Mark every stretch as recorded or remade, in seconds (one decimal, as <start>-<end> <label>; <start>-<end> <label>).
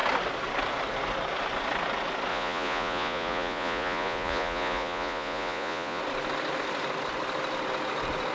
0.0-2.3 recorded; 2.3-6.0 remade; 6.0-8.3 recorded